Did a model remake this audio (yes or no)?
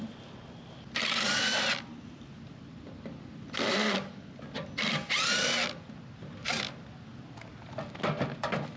no